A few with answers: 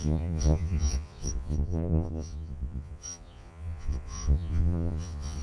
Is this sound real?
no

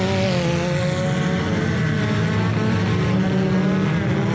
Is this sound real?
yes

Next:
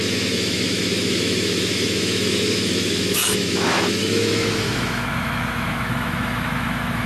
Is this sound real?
no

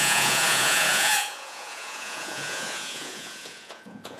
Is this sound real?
no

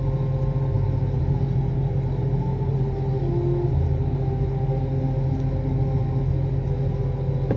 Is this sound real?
yes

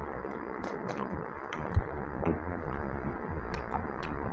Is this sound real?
no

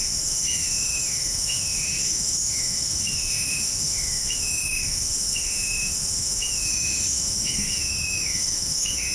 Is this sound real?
no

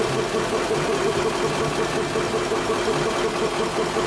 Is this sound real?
yes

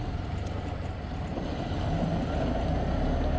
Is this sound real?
yes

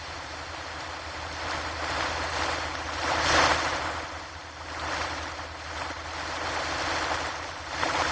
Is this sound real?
yes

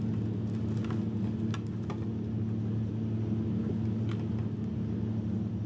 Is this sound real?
yes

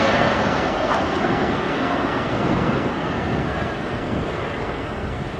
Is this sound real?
no